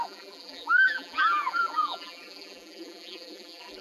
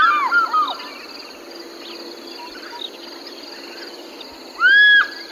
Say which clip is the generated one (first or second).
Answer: first